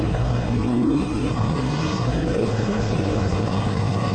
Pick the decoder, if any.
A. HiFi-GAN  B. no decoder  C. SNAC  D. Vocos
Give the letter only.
C